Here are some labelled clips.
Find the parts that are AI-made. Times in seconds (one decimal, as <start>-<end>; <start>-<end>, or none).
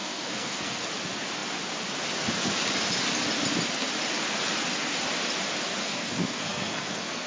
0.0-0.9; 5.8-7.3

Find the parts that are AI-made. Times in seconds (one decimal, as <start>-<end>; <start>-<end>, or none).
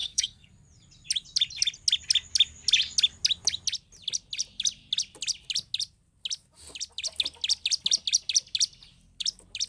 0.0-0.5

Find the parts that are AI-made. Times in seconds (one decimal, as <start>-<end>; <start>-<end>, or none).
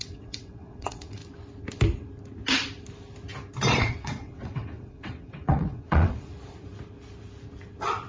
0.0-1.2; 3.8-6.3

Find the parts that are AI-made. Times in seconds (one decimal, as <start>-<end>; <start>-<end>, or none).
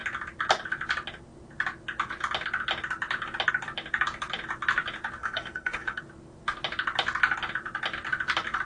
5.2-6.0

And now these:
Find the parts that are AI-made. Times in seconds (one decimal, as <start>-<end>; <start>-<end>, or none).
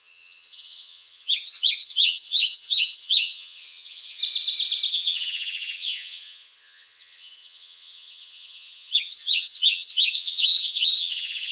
0.0-4.2; 4.9-11.5